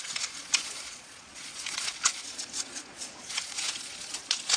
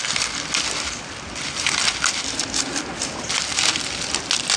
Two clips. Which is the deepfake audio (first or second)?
first